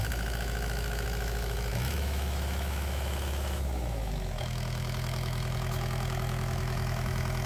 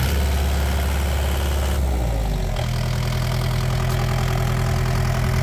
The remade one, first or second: first